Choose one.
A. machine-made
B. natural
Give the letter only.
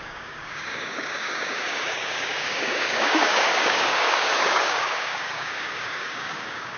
A